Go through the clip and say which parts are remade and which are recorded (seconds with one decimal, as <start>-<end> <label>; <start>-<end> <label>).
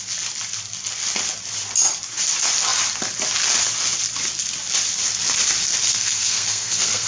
0.0-5.9 recorded; 5.9-7.1 remade